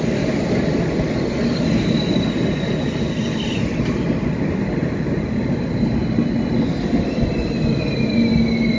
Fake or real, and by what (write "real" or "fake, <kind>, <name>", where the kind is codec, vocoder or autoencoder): real